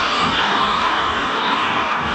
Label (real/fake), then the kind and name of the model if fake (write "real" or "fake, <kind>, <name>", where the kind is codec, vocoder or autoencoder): fake, codec, DAC